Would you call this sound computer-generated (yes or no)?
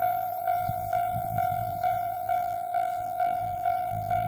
yes